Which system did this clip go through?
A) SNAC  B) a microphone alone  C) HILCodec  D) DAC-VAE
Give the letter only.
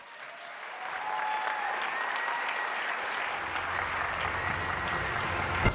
B